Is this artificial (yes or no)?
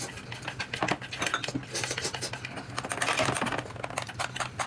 no